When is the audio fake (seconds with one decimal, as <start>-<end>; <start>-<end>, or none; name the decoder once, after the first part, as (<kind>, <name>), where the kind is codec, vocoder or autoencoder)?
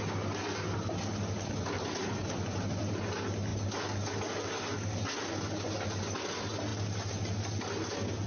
none